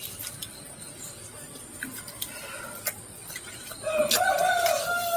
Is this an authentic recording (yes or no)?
yes